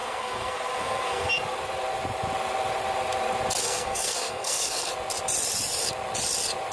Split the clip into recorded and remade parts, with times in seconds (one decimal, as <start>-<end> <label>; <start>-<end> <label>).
0.0-1.3 remade; 1.3-3.6 recorded; 3.6-4.9 remade; 4.9-6.7 recorded